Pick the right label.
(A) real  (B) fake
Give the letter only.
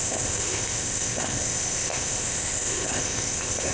B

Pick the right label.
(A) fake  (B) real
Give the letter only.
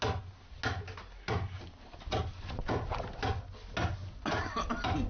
B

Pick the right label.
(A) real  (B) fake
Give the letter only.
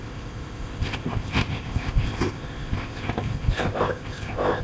B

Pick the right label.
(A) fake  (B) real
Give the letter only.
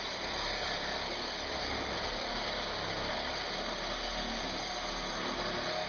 B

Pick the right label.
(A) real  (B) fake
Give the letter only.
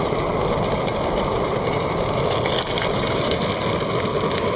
A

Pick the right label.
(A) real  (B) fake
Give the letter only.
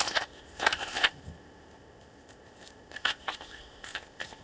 B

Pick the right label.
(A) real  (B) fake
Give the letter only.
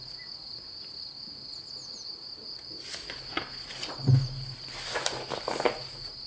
A